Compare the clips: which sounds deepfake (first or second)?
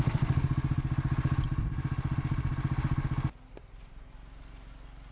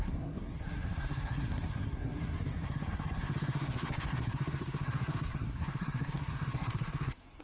second